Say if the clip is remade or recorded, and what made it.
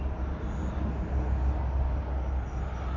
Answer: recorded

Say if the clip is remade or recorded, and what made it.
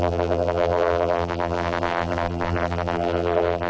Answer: remade, vocoder, BigVGAN v2